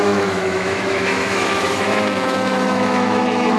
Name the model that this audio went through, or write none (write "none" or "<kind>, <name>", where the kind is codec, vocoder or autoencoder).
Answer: autoencoder, DAC-VAE